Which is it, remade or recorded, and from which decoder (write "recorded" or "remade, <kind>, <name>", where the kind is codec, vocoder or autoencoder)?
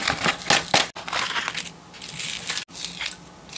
recorded